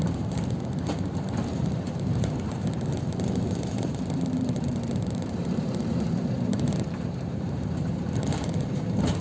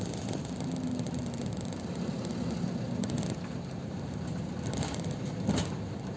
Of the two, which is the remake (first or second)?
first